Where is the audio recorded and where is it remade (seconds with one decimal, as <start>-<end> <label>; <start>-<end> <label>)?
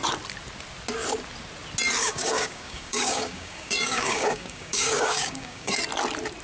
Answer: 0.0-2.0 recorded; 2.0-5.8 remade; 5.8-6.4 recorded